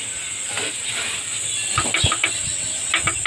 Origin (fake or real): real